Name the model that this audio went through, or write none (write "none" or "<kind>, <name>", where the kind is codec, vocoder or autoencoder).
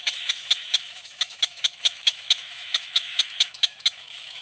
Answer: autoencoder, DAC-VAE